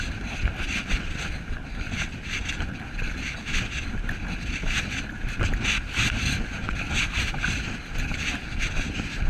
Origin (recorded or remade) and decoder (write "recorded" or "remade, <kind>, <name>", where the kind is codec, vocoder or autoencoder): recorded